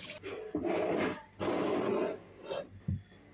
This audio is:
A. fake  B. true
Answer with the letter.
B